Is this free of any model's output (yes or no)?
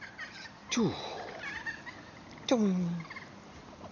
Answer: yes